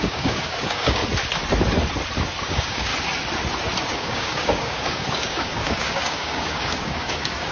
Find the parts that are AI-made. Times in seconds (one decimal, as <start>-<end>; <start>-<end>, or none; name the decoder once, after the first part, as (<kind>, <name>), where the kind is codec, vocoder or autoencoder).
0.0-1.0 (codec, DAC); 2.4-2.9; 3.9-7.5